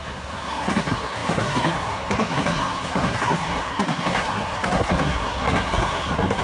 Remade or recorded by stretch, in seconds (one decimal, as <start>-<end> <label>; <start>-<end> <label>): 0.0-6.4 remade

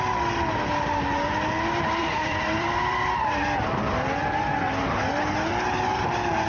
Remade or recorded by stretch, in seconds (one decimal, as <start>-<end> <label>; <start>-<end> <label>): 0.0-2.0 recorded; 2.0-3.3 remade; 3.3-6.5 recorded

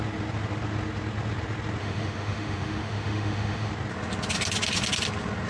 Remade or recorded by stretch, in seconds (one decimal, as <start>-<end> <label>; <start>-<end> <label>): 0.0-1.8 recorded; 1.8-3.7 remade; 3.7-5.5 recorded

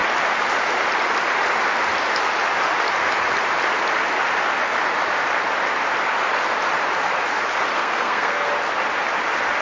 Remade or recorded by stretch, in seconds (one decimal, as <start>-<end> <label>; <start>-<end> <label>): 0.0-7.7 recorded; 7.7-8.5 remade; 8.5-9.6 recorded

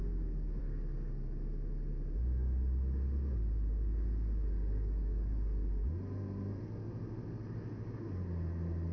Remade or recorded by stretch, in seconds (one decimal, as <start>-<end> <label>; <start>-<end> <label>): 0.0-8.9 recorded

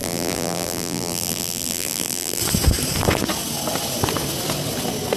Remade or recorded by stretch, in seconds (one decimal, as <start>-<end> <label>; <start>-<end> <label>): 0.0-2.4 remade; 2.4-5.2 recorded